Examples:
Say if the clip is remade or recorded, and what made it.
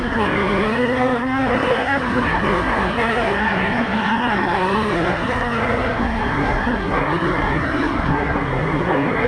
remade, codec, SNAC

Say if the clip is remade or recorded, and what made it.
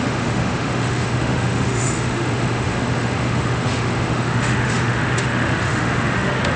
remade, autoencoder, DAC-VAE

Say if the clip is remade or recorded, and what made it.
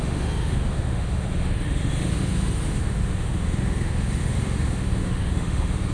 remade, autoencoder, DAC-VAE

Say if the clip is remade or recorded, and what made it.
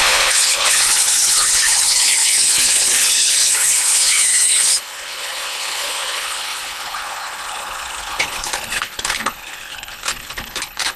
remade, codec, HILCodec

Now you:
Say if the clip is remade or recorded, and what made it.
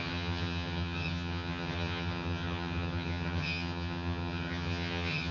remade, vocoder, HiFi-GAN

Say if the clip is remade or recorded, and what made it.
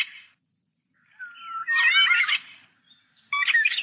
recorded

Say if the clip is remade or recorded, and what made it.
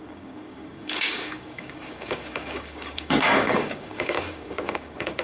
remade, codec, DAC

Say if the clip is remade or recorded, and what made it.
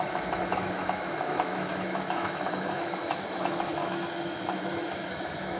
remade, autoencoder, DAC-VAE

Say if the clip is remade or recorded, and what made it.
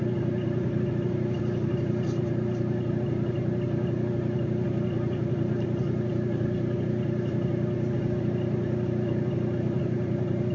recorded